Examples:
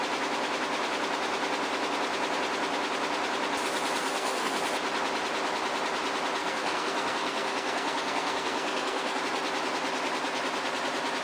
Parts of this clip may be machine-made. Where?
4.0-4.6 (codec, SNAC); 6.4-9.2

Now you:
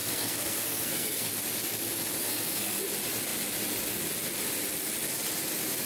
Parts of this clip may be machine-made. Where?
0.0-1.3 (codec, SNAC); 2.2-2.8

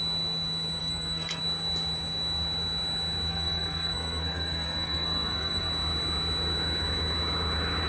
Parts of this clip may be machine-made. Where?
0.8-1.4 (codec, SNAC); 3.3-5.7